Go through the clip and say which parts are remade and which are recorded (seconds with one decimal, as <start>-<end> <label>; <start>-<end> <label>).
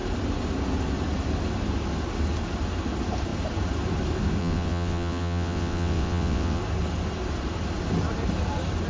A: 0.0-4.4 recorded; 4.4-6.6 remade; 6.6-8.9 recorded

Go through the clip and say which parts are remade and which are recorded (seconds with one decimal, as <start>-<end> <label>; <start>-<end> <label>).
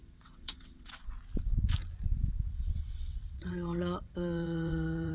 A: 0.0-1.1 remade; 1.1-2.5 recorded; 2.5-5.1 remade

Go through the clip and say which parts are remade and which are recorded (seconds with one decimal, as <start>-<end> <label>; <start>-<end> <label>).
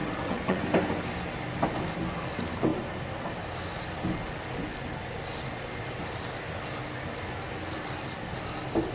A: 0.0-0.6 remade; 0.6-8.9 recorded